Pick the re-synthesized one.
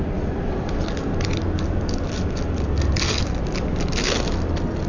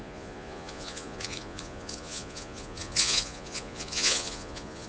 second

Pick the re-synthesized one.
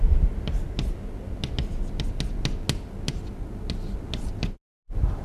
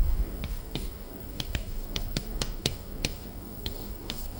second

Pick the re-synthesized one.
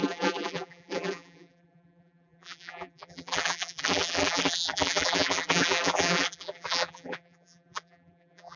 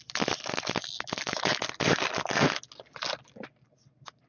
first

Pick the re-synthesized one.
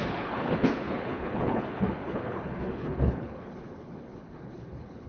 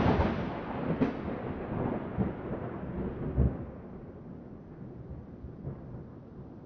first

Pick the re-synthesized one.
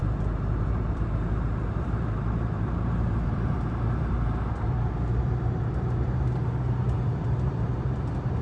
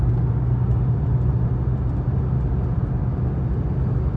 first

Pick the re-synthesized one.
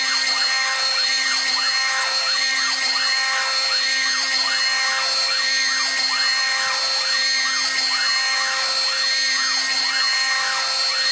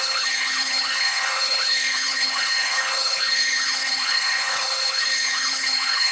second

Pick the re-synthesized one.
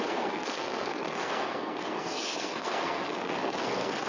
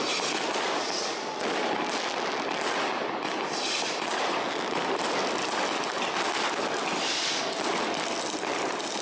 first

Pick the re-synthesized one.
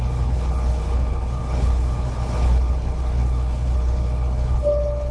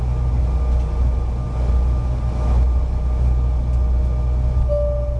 first